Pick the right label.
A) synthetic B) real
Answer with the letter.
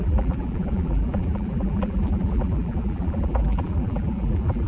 A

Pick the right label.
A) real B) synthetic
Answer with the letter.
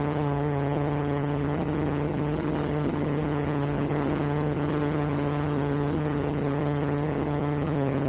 B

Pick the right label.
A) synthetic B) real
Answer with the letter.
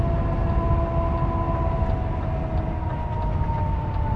B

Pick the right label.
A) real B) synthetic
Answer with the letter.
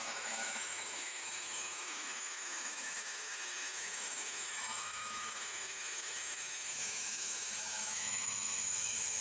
B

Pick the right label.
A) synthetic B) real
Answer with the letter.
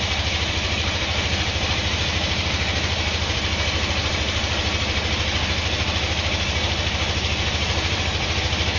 A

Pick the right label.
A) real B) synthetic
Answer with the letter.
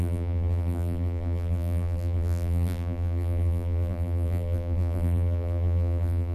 B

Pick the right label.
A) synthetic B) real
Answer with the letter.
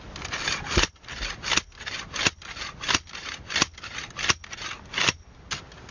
B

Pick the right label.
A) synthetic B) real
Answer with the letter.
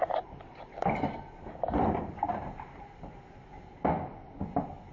B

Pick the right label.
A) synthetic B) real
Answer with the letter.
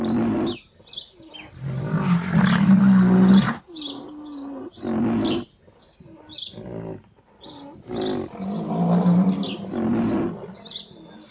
B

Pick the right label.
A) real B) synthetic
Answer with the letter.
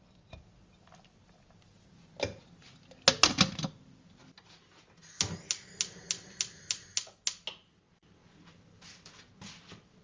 A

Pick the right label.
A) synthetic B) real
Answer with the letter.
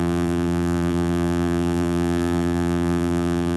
A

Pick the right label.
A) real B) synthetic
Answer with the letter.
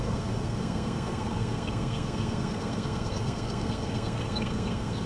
B